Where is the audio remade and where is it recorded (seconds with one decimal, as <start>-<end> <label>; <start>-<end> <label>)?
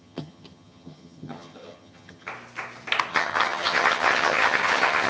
0.0-2.3 remade; 2.3-3.1 recorded; 3.1-5.1 remade